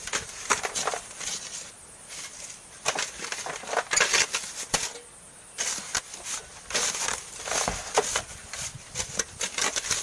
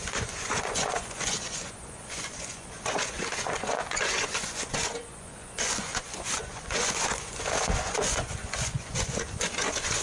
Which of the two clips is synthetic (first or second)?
second